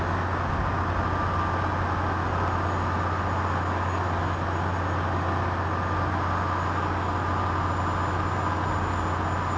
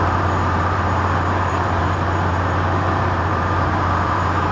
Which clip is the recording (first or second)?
first